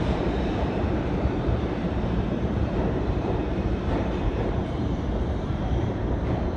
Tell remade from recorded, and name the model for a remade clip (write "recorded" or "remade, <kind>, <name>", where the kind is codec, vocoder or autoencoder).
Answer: remade, vocoder, BigVGAN v2